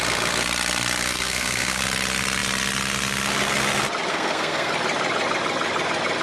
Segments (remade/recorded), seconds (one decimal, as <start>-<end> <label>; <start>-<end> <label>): 0.0-1.0 recorded; 1.0-1.8 remade; 1.8-4.1 recorded; 4.1-4.7 remade; 4.7-6.2 recorded